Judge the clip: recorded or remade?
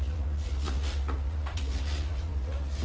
remade